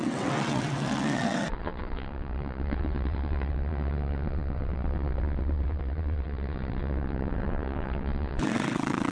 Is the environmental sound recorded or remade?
remade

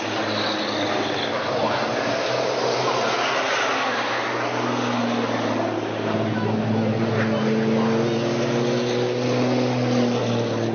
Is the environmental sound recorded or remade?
recorded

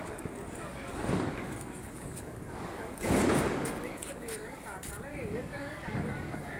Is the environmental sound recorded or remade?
remade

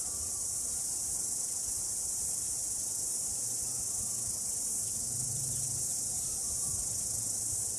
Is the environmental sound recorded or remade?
remade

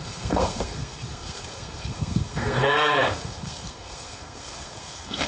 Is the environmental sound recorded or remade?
remade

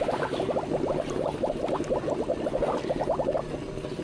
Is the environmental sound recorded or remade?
recorded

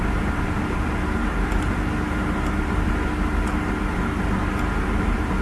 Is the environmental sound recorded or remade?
recorded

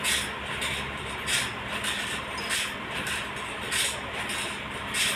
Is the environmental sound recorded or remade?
recorded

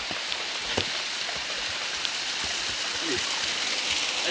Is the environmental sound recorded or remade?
recorded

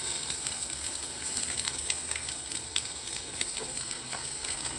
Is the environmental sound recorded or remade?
remade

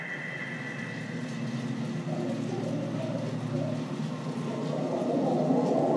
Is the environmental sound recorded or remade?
recorded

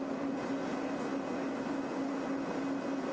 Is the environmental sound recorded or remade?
recorded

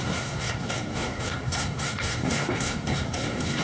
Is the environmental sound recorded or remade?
remade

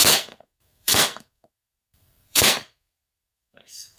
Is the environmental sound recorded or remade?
remade